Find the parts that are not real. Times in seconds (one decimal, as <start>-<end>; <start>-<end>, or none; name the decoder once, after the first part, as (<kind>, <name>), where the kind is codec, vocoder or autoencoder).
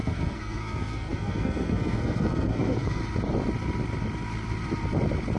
0.0-3.0 (codec, SNAC)